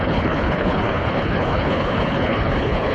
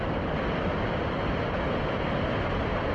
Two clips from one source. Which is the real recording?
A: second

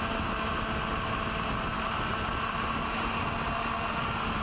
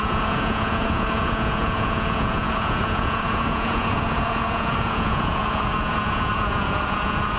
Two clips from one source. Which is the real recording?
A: first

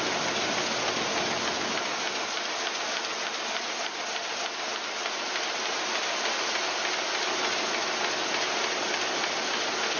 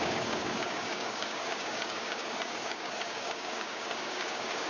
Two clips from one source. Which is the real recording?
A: first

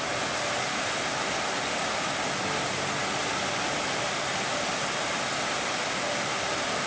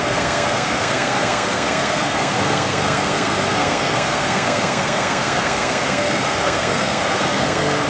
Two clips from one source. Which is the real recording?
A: first